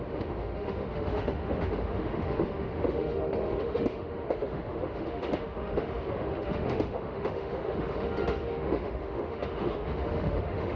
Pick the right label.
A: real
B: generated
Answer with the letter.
B